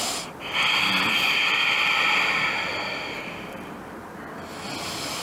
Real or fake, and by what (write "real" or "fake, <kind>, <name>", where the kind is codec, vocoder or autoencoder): real